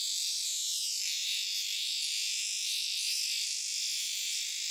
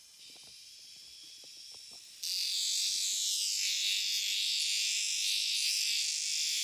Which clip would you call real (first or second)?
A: second